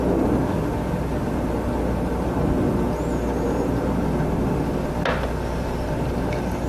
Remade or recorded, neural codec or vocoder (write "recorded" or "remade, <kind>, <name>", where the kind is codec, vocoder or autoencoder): recorded